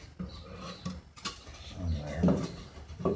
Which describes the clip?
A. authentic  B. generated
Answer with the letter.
A